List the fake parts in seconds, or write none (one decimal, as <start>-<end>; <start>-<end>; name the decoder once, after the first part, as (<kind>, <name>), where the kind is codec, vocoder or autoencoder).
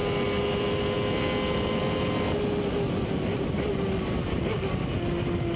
none